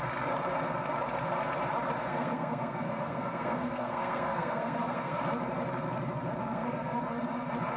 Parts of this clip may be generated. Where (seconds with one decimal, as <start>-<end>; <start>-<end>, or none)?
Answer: 2.1-5.2; 6.4-7.0